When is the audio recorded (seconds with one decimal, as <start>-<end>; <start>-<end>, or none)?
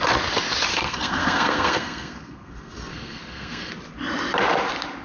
0.0-0.7; 3.7-5.0